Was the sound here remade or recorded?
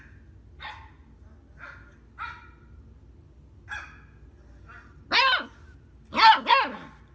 recorded